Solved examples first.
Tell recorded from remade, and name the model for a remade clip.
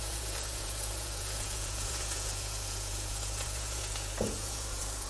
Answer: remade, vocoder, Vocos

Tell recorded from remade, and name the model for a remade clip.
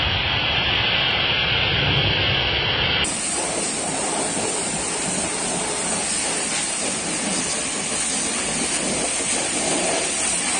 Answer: recorded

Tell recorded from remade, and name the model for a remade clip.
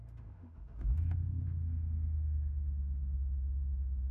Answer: remade, autoencoder, DAC-VAE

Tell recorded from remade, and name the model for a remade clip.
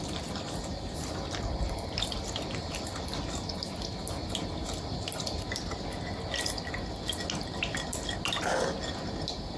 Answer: recorded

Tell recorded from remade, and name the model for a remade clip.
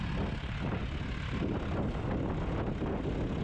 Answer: recorded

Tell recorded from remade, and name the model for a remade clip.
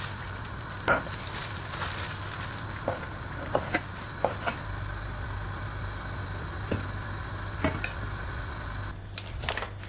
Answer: recorded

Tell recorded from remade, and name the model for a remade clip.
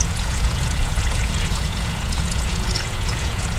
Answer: remade, vocoder, Vocos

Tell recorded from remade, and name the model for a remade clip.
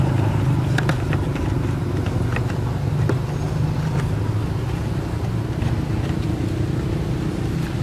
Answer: recorded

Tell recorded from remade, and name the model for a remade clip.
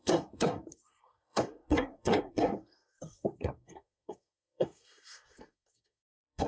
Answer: remade, codec, SNAC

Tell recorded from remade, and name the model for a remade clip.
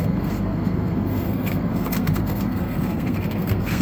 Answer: remade, codec, SNAC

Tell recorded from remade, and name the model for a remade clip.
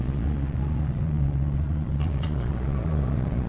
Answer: remade, vocoder, Vocos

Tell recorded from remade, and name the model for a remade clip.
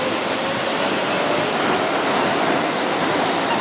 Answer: recorded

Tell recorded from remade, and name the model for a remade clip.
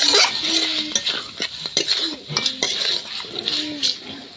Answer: recorded